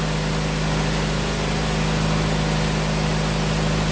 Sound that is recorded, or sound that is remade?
recorded